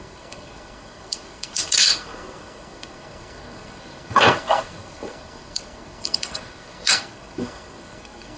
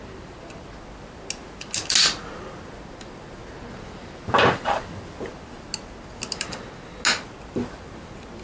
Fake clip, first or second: first